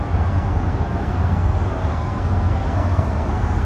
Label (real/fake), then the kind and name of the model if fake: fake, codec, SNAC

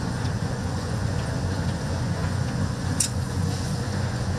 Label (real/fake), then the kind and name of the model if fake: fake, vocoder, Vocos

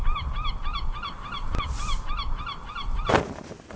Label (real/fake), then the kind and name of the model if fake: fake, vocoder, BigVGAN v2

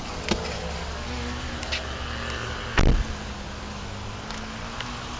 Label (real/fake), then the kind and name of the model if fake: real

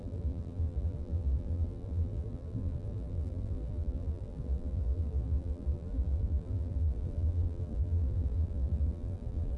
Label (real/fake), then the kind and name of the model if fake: fake, vocoder, BigVGAN v2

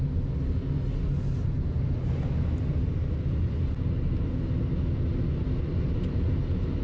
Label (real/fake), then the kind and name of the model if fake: real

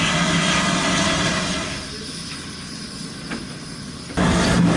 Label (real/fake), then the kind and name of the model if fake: real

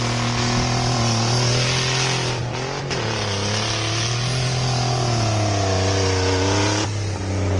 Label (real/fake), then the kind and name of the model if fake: real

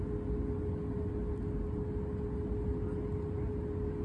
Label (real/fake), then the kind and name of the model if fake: real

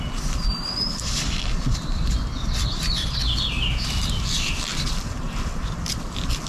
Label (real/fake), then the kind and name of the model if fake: fake, vocoder, BigVGAN v2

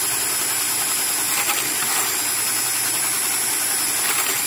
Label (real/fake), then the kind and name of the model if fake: real